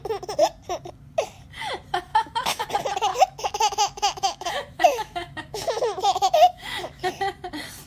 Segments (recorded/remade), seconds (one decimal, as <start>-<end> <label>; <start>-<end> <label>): 0.0-2.1 recorded; 2.1-2.7 remade; 2.7-3.1 recorded; 3.1-7.1 remade; 7.1-7.9 recorded